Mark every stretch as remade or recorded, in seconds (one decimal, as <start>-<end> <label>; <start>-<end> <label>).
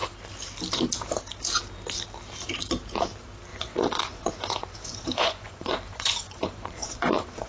0.0-3.5 recorded; 3.5-7.5 remade